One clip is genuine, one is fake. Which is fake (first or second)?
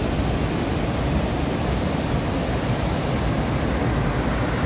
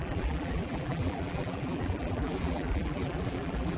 second